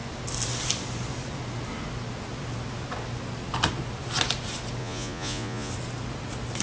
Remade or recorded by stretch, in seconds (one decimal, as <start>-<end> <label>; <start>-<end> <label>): 0.0-4.8 recorded; 4.8-5.7 remade; 5.7-6.6 recorded